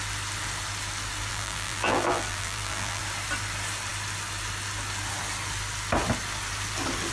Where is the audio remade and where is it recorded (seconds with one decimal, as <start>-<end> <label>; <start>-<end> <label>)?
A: 0.0-1.3 recorded; 1.3-3.0 remade; 3.0-7.1 recorded